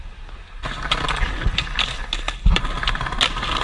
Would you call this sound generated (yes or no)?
no